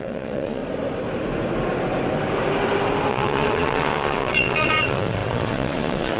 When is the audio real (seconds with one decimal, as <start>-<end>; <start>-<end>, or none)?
0.6-3.1

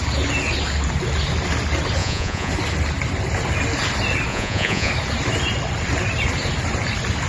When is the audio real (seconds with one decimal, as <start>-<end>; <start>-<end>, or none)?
0.0-2.0; 2.5-4.3; 4.9-7.3